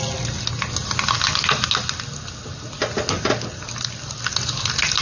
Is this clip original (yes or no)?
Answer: yes